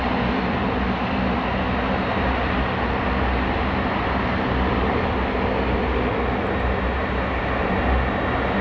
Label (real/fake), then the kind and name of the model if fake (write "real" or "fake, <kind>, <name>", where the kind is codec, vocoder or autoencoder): real